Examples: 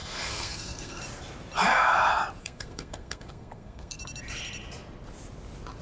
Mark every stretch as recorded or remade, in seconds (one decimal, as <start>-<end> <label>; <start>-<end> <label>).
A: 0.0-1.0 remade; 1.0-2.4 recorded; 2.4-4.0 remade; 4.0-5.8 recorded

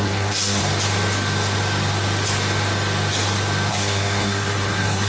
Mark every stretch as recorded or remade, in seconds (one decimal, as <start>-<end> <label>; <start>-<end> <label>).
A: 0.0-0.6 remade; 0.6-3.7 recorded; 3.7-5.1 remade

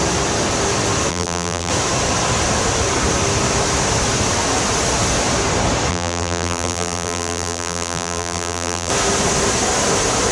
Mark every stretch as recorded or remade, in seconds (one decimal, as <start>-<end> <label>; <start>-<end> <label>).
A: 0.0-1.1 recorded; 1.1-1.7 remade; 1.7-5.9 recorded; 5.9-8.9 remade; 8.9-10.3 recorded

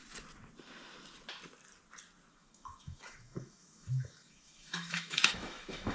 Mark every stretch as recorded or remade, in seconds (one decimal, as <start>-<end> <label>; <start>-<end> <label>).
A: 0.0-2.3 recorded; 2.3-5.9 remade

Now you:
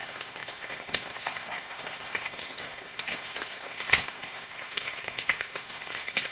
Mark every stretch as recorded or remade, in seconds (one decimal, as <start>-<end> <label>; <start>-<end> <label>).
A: 0.0-6.3 remade

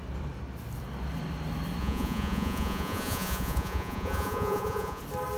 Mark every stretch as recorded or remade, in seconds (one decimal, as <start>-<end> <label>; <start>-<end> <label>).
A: 0.0-1.8 recorded; 1.8-5.0 remade; 5.0-5.4 recorded